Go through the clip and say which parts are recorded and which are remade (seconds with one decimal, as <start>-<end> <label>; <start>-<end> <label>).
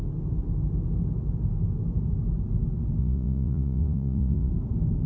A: 0.0-3.0 recorded; 3.0-4.5 remade; 4.5-5.1 recorded